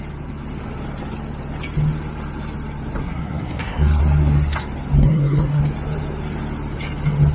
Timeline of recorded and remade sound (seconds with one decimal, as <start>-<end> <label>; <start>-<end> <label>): 0.0-3.0 recorded; 3.0-4.0 remade; 4.0-5.0 recorded; 5.0-5.6 remade; 5.6-7.3 recorded